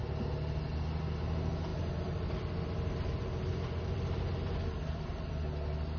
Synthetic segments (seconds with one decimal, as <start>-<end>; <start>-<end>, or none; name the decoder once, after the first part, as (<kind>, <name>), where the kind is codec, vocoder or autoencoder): 1.7-5.3 (vocoder, BigVGAN v2)